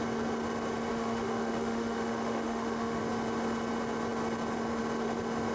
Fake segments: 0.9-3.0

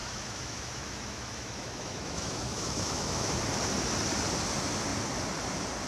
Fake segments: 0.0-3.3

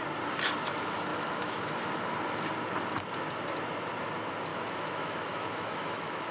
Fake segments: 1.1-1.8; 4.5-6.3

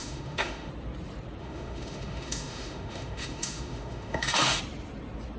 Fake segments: 0.0-0.7; 1.4-4.6

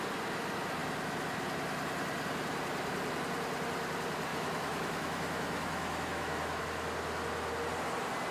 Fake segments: 4.3-6.6